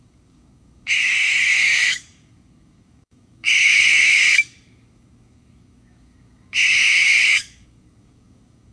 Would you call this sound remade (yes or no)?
yes